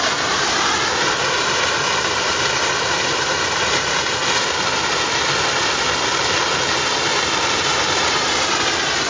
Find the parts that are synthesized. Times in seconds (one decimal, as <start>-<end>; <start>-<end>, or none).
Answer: 0.0-4.2; 7.4-9.1